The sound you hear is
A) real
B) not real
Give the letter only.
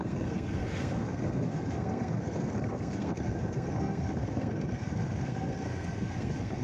B